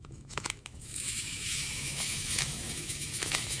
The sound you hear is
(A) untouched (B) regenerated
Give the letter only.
B